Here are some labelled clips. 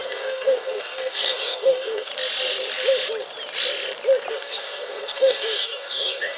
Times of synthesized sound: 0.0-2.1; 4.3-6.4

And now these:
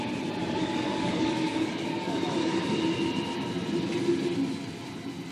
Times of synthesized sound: 0.4-2.6